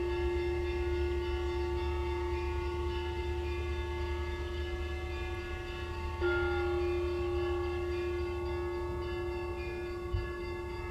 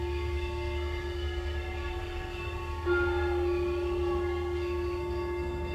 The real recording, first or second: first